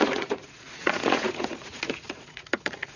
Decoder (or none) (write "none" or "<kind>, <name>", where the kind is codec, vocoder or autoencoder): vocoder, Vocos